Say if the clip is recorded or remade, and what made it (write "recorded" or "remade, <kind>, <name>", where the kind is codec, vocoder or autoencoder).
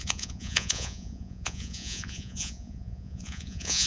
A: remade, vocoder, Vocos